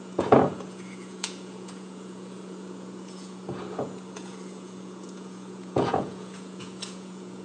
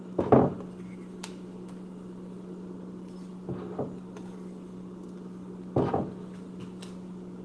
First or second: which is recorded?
second